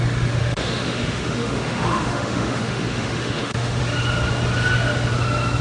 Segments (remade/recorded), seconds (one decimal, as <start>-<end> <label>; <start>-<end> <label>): 0.0-0.4 recorded; 0.4-3.8 remade; 3.8-5.6 recorded